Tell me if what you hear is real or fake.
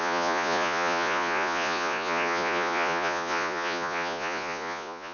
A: fake